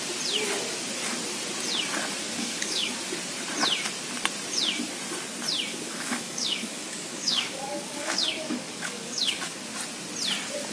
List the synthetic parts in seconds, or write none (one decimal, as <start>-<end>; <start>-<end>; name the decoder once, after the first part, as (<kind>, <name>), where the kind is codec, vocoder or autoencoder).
2.3-2.9 (codec, DAC); 5.7-9.6